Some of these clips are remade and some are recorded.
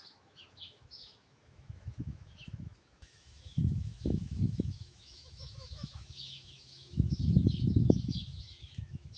remade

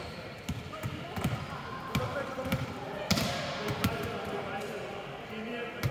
recorded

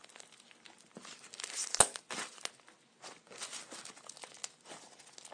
recorded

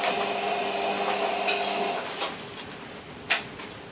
recorded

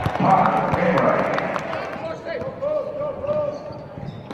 recorded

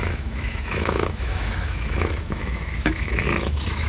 remade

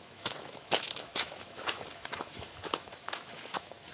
remade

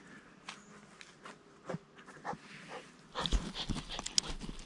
recorded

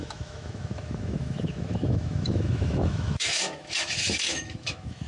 remade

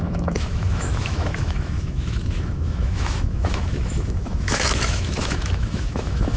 remade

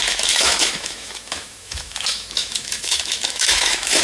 remade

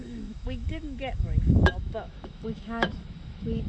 remade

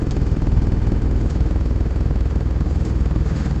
remade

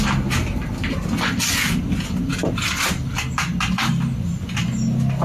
recorded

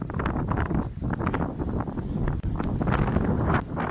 recorded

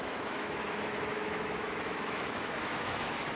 remade